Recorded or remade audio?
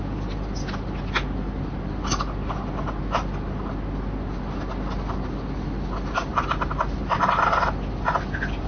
recorded